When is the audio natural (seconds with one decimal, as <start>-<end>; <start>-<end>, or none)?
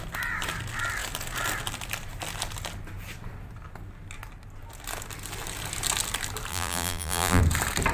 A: 0.0-6.5; 7.4-7.9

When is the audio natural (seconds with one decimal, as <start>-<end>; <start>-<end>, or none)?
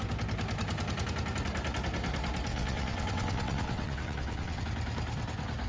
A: 0.0-2.5; 4.6-5.7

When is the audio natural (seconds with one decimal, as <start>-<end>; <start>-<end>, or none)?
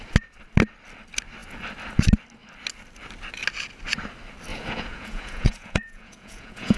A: 0.0-4.5